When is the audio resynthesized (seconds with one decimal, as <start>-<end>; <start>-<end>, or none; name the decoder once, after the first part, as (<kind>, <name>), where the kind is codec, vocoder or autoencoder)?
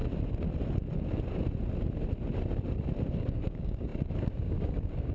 3.1-5.1 (codec, DAC)